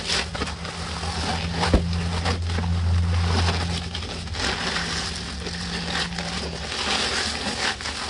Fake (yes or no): no